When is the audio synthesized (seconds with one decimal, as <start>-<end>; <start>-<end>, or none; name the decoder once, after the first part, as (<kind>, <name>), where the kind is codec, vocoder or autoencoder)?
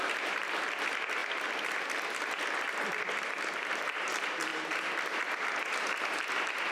none